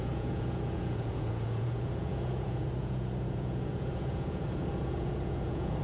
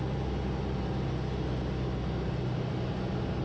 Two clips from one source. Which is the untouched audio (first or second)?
second